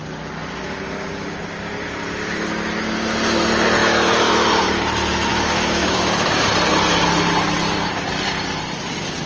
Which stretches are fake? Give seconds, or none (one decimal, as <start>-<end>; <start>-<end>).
3.8-4.5; 5.3-6.3